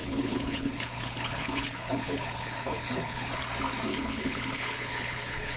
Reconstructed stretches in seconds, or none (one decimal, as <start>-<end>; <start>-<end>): 0.0-3.4; 3.9-5.6